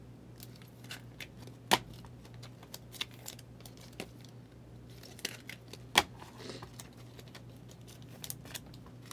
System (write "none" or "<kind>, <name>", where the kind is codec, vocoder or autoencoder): none